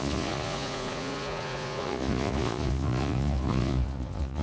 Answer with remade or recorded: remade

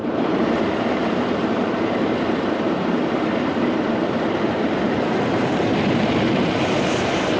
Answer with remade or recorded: remade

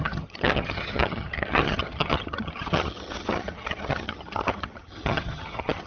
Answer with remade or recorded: remade